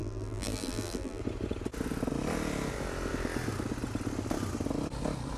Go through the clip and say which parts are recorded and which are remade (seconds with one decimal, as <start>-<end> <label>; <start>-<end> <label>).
0.0-1.2 remade; 1.2-5.4 recorded